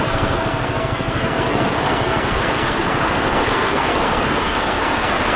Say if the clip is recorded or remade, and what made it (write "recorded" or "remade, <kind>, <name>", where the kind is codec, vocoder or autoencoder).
remade, codec, SNAC